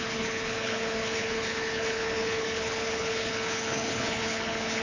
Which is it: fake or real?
fake